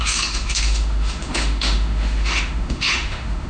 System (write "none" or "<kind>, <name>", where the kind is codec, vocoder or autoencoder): autoencoder, DAC-VAE